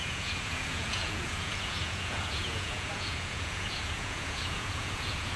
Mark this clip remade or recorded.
remade